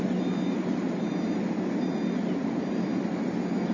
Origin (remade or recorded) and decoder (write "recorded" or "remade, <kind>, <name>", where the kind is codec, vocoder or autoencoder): recorded